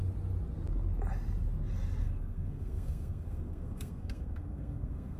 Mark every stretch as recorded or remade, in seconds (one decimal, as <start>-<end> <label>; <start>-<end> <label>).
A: 0.0-2.0 recorded; 2.0-5.2 remade